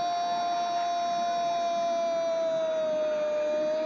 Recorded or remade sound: recorded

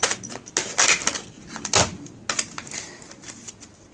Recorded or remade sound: recorded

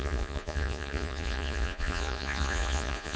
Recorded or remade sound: remade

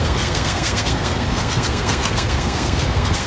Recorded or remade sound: remade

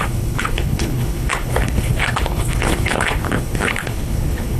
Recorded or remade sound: remade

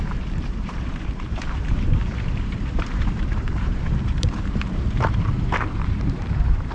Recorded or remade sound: remade